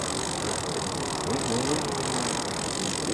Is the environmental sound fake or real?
real